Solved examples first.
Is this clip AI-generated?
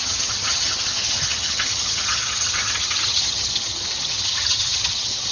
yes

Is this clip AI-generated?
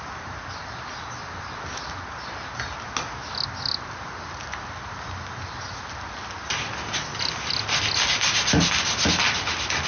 no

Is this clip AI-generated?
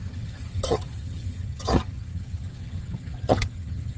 yes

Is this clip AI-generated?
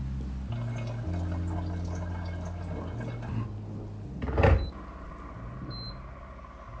no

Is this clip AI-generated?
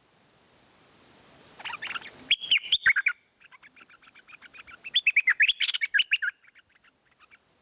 no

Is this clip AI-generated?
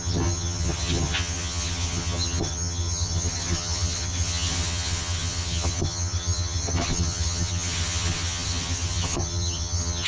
yes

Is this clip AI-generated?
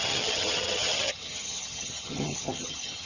yes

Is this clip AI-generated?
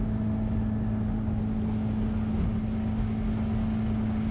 no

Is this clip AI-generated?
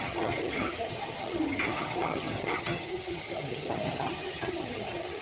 yes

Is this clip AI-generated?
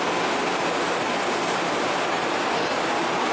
no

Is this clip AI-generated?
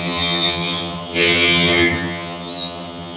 yes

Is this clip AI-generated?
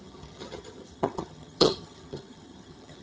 yes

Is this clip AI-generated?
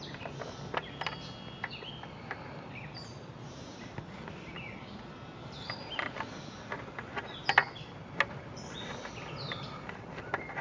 no